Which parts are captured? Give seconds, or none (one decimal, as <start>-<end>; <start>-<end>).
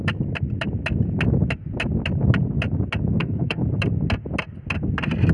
0.0-3.2; 3.6-5.3